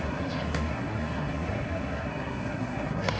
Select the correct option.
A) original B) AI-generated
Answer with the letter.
B